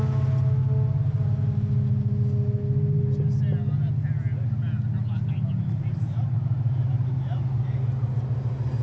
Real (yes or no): yes